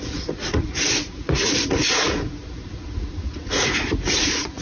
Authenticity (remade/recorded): remade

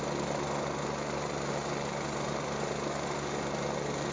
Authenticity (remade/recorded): recorded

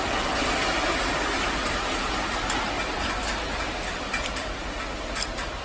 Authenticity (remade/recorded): recorded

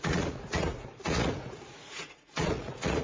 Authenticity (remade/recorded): remade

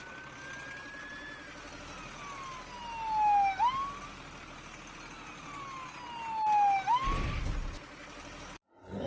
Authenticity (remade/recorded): recorded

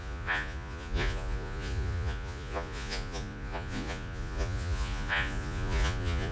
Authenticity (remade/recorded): remade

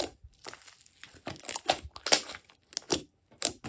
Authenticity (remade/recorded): recorded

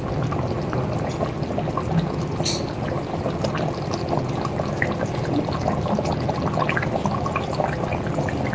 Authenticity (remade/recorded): recorded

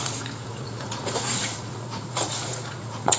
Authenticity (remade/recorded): remade